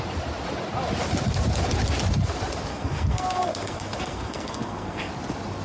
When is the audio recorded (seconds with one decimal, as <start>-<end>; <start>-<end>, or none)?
0.0-2.7; 5.1-5.6